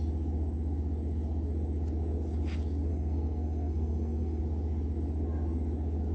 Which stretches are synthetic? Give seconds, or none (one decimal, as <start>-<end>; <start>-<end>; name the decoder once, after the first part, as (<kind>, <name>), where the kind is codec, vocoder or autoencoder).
2.9-4.4 (codec, SNAC)